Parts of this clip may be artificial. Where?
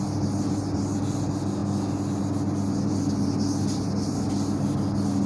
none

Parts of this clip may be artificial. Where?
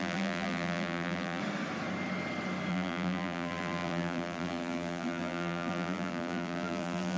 0.0-1.4 (vocoder, BigVGAN v2); 2.7-7.2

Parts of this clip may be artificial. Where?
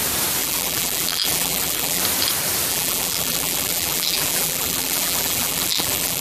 0.4-2.0 (vocoder, BigVGAN v2); 2.7-6.2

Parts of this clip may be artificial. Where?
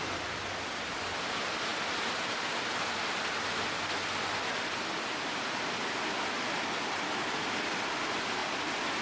1.7-7.0 (vocoder, BigVGAN v2)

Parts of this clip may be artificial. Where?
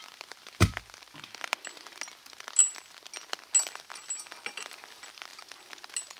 none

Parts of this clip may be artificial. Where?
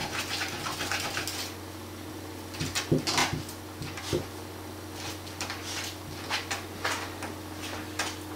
none